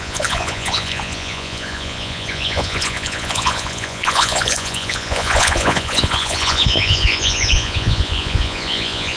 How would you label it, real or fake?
fake